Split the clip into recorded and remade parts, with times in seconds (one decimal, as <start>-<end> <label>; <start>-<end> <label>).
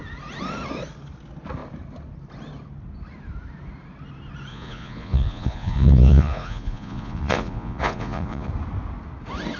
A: 0.0-4.5 recorded; 4.5-8.5 remade; 8.5-9.6 recorded